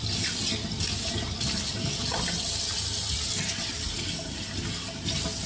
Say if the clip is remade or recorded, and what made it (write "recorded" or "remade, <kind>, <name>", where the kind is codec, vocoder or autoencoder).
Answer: recorded